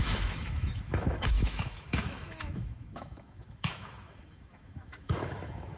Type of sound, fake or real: fake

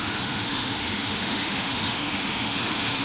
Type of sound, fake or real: fake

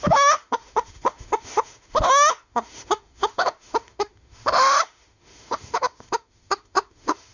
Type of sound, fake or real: fake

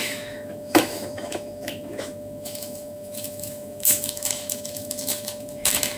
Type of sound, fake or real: fake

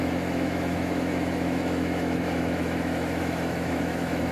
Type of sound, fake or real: fake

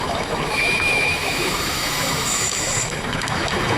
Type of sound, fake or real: fake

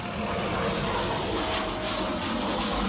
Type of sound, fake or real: real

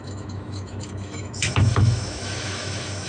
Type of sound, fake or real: fake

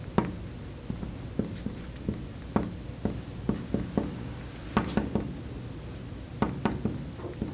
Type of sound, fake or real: real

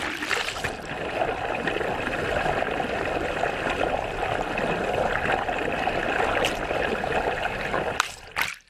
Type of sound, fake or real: real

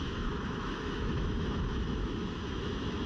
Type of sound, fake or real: fake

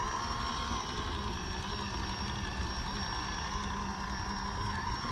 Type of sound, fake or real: real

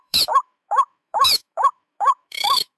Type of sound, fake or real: fake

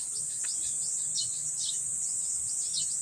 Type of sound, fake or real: real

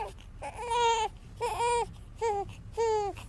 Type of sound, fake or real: real